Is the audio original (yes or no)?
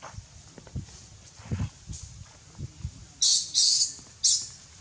yes